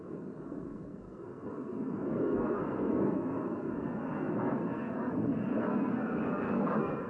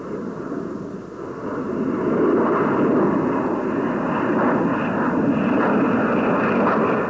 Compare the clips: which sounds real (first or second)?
second